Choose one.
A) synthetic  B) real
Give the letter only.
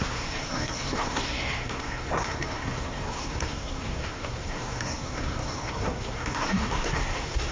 A